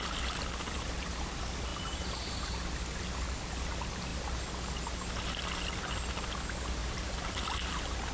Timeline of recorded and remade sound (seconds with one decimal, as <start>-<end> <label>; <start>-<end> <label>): 0.0-1.7 recorded; 1.7-2.6 remade; 2.6-6.8 recorded; 6.8-7.4 remade; 7.4-8.1 recorded